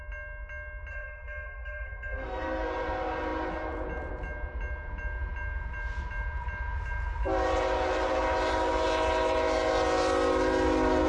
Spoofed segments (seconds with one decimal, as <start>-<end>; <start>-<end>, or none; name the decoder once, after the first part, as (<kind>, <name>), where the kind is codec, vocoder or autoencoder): 0.9-2.7 (codec, SNAC)